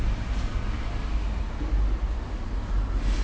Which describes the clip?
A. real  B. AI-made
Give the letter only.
A